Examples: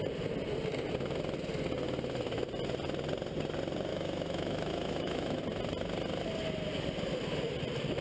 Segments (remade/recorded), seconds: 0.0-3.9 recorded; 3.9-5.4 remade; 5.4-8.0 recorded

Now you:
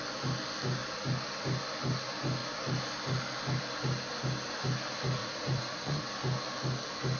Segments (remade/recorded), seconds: 0.0-5.2 recorded; 5.2-6.1 remade; 6.1-7.2 recorded

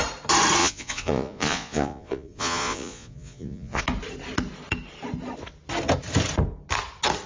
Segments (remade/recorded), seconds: 0.0-0.6 recorded; 0.6-3.8 remade; 3.8-7.3 recorded

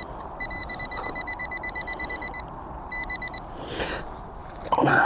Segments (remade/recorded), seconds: 0.0-0.6 recorded; 0.6-3.7 remade; 3.7-4.4 recorded; 4.4-5.1 remade

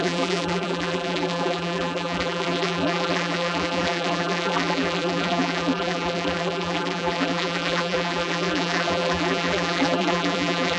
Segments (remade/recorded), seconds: 0.0-10.8 remade

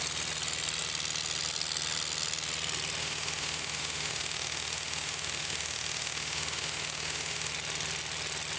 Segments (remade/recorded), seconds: 0.0-3.0 recorded; 3.0-7.5 remade; 7.5-8.6 recorded

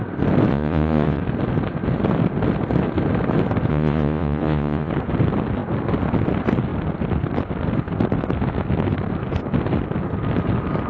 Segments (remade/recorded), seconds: 0.0-0.5 recorded; 0.5-1.2 remade; 1.2-3.7 recorded; 3.7-4.9 remade; 4.9-10.9 recorded

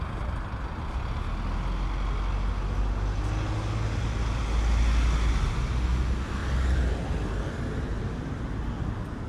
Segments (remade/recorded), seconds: 0.0-6.4 recorded; 6.4-8.0 remade; 8.0-9.3 recorded